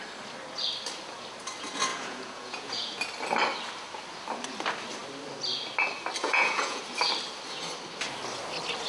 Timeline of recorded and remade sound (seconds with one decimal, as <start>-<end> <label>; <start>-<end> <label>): 0.0-1.9 recorded; 1.9-3.0 remade; 3.0-6.2 recorded; 6.2-6.8 remade; 6.8-8.9 recorded

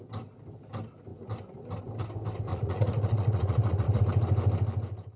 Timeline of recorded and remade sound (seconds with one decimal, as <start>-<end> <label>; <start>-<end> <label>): 0.0-2.5 recorded; 2.5-4.0 remade; 4.0-5.2 recorded

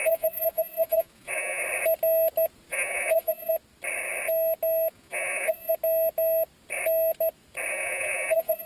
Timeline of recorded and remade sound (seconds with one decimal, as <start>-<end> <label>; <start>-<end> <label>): 0.0-1.6 remade; 1.6-2.7 recorded; 2.7-3.5 remade; 3.5-4.9 recorded; 4.9-5.7 remade; 5.7-7.7 recorded; 7.7-8.7 remade

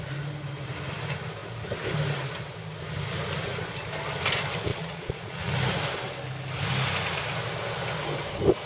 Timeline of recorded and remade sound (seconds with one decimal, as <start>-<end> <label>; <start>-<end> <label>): 0.0-4.7 recorded; 4.7-5.5 remade; 5.5-8.7 recorded

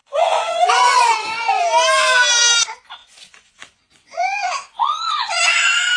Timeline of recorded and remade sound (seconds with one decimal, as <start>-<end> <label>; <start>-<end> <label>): 0.0-1.6 remade; 1.6-3.0 recorded; 3.0-5.4 remade; 5.4-6.0 recorded

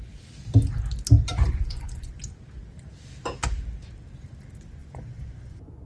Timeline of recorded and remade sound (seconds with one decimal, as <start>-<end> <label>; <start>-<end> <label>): 0.0-1.3 recorded; 1.3-2.2 remade; 2.2-4.8 recorded; 4.8-5.8 remade

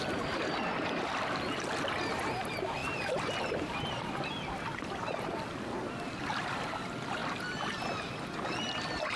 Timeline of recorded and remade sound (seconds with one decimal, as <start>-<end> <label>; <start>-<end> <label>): 0.0-9.2 recorded

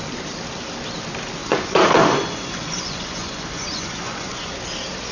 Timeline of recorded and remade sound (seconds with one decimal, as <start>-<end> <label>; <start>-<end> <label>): 0.0-1.4 recorded; 1.4-4.5 remade; 4.5-5.1 recorded